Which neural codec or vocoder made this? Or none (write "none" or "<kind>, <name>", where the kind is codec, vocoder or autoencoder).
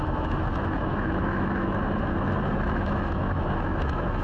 autoencoder, DAC-VAE